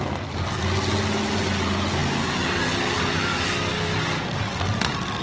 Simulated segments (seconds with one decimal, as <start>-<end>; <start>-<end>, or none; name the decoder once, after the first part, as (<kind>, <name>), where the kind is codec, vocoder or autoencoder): none